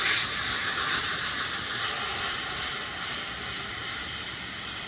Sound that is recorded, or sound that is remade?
recorded